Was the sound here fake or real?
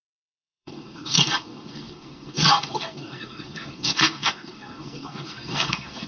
fake